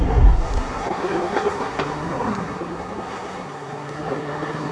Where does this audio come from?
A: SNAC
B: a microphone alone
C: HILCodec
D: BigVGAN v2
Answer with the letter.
A